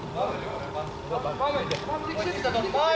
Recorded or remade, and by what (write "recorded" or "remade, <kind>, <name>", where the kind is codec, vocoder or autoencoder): recorded